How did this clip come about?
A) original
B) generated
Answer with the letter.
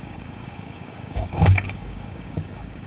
B